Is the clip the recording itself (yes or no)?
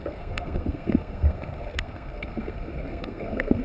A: no